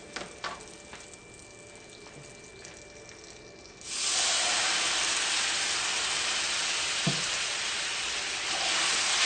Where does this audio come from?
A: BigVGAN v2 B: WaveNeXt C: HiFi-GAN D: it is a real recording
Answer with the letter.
D